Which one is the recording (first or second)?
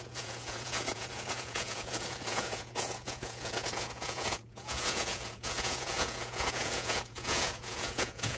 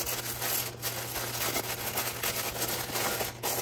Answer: second